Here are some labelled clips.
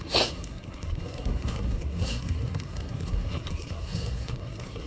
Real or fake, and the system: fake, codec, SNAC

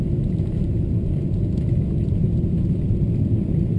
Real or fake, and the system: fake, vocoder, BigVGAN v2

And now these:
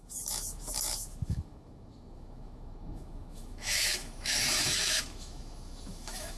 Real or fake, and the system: fake, autoencoder, DAC-VAE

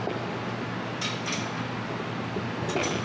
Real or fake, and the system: real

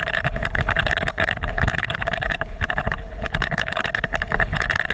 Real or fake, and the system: fake, codec, HILCodec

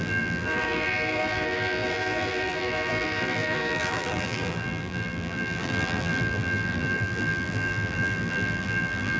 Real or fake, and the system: fake, vocoder, BigVGAN v2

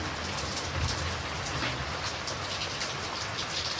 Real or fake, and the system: real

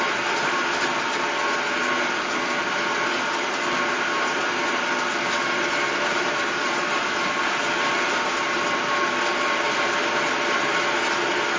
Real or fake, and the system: real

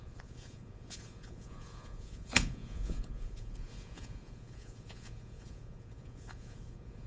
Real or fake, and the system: fake, vocoder, Vocos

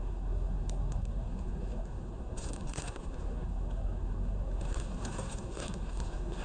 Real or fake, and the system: fake, codec, SNAC